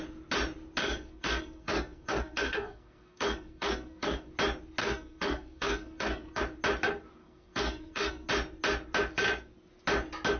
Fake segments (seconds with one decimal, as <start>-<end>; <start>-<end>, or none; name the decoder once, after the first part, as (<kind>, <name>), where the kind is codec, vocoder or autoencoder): 0.8-4.3 (codec, SNAC); 4.8-6.4; 7.2-8.3